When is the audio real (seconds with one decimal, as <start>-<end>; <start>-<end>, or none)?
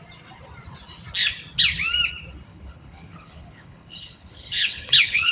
0.0-2.5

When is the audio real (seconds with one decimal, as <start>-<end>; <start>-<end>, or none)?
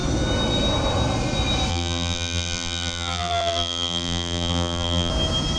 0.0-1.7; 5.1-5.6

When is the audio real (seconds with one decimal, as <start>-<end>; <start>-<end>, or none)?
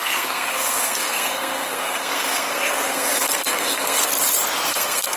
4.1-4.7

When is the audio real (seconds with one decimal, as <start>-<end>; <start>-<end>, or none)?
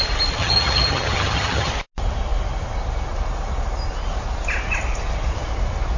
0.0-0.4; 1.7-6.0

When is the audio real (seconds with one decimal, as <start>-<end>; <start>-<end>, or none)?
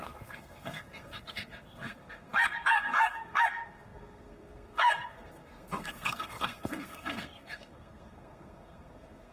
none